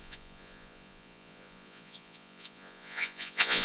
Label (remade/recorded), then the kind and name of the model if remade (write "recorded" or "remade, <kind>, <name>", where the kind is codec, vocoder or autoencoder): remade, vocoder, Vocos